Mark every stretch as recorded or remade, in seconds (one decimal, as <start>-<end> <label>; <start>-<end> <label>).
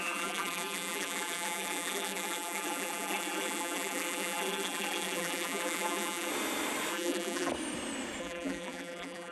0.0-6.3 remade; 6.3-6.9 recorded; 6.9-7.5 remade; 7.5-8.2 recorded; 8.2-9.3 remade